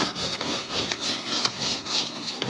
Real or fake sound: fake